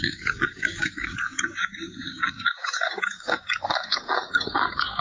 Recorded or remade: remade